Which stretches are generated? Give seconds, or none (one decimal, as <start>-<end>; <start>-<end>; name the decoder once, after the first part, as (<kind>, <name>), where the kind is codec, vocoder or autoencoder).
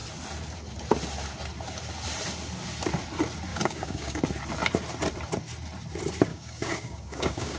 3.5-4.2 (codec, DAC); 6.3-7.6